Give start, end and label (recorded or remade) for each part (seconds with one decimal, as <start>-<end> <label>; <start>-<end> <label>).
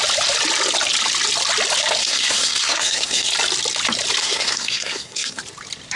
0.0-2.0 recorded; 2.0-3.3 remade; 3.3-4.2 recorded; 4.2-5.4 remade; 5.4-6.0 recorded